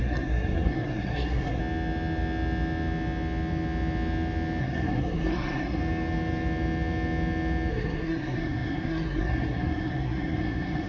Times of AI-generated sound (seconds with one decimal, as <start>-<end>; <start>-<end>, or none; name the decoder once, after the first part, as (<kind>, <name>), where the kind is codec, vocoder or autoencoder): 0.0-1.6 (codec, SNAC); 4.6-5.8; 7.7-10.9